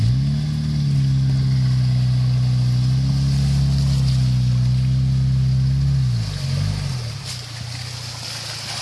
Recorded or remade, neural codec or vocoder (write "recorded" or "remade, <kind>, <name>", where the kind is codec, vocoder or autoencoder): recorded